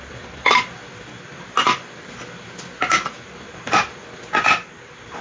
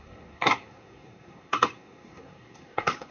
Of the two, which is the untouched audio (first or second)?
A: first